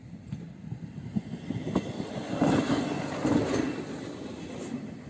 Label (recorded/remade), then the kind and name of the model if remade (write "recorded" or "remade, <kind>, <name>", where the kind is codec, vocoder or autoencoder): recorded